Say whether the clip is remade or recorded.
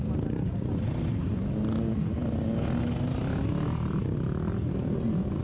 recorded